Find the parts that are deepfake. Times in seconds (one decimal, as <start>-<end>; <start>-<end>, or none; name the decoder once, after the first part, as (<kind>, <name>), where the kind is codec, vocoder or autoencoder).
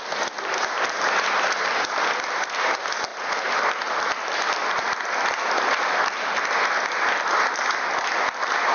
none